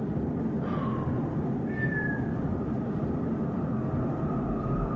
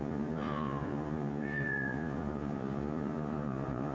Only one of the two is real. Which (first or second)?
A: first